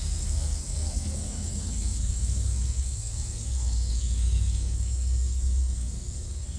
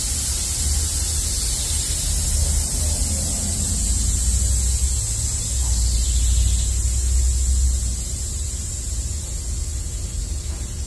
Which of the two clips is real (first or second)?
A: second